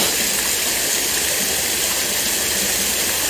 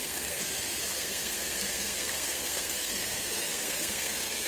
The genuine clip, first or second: first